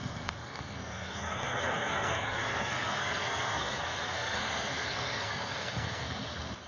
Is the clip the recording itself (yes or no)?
no